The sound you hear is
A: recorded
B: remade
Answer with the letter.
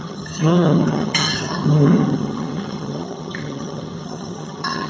B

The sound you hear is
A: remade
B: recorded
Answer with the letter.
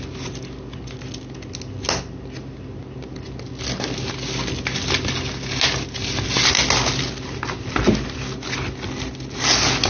B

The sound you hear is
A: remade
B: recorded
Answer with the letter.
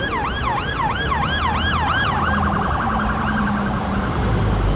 B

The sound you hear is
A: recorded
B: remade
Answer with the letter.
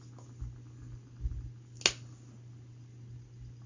A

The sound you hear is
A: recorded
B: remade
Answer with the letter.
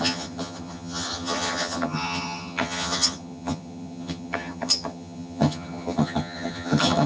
B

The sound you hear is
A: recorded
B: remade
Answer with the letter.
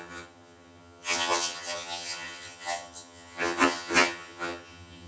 B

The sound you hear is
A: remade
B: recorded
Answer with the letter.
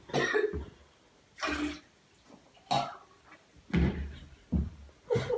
B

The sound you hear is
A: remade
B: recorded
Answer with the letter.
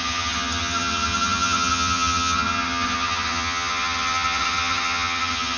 A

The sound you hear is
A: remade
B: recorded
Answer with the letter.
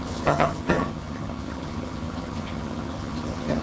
A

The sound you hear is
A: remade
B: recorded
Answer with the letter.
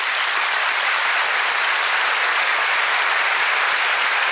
B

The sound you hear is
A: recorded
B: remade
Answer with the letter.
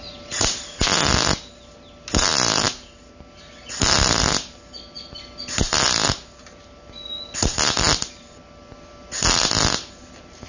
A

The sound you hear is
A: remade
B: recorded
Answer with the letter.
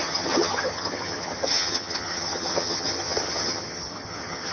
A